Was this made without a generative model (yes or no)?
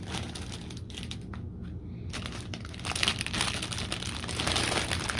yes